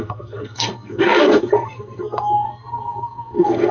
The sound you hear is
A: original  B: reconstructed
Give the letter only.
B